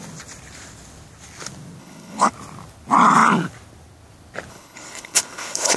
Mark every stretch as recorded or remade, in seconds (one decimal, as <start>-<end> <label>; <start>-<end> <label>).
0.0-1.8 recorded; 1.8-2.3 remade; 2.3-4.5 recorded; 4.5-5.8 remade